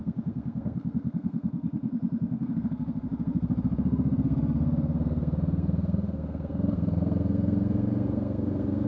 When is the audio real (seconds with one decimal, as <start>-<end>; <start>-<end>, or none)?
none

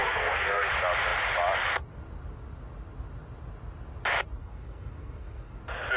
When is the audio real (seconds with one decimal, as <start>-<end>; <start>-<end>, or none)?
0.7-4.4; 5.6-6.0

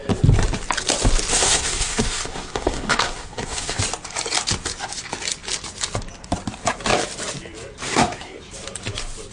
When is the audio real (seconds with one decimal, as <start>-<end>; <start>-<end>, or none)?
0.0-1.3; 3.8-7.9; 8.4-9.3